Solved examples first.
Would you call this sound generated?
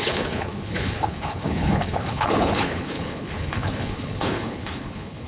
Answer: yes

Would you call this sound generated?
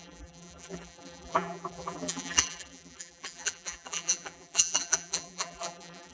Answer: yes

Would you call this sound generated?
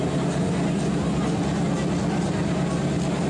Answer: no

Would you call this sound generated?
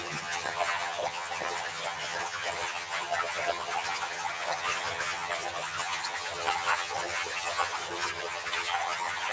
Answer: yes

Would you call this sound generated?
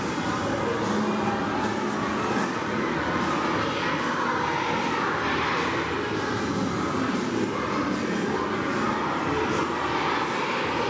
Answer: no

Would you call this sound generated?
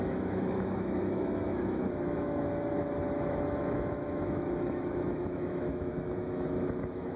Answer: yes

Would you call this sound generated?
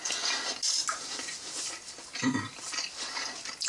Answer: no